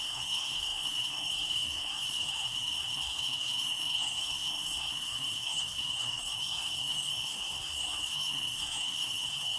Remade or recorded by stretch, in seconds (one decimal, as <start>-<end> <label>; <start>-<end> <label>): 0.0-9.6 remade